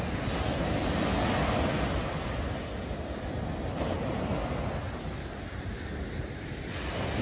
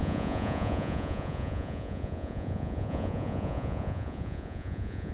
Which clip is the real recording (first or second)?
first